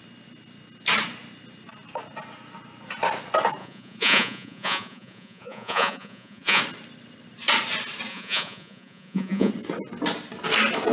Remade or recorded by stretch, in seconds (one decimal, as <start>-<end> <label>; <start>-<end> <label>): 0.0-3.6 recorded; 3.6-6.6 remade; 6.6-8.1 recorded; 8.1-9.5 remade; 9.5-10.9 recorded

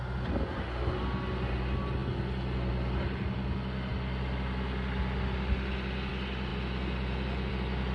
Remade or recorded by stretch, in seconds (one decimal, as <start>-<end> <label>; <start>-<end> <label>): 0.0-7.9 recorded

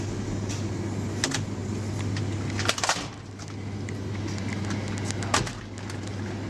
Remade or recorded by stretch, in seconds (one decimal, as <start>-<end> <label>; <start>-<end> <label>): 0.0-6.5 recorded

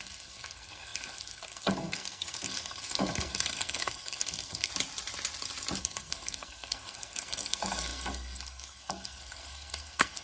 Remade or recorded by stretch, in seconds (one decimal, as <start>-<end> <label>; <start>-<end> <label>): 0.0-4.7 remade; 4.7-5.8 recorded; 5.8-10.2 remade